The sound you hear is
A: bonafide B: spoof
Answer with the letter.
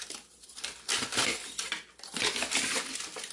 A